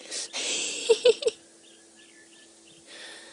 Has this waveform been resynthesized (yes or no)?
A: no